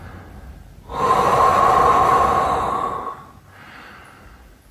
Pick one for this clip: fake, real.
real